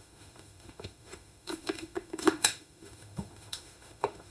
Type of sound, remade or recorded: remade